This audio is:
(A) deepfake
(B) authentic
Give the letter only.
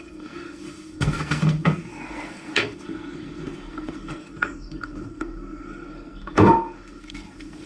A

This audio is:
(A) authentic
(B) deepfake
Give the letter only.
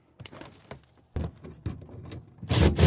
A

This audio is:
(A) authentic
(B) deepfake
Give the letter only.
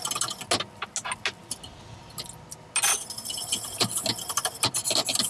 A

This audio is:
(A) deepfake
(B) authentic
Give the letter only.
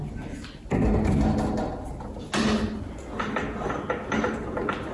B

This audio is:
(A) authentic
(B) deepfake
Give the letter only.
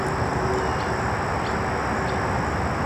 A